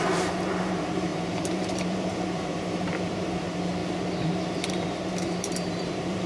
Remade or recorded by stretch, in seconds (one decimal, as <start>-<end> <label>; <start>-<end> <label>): 0.0-3.8 remade; 3.8-4.7 recorded; 4.7-6.3 remade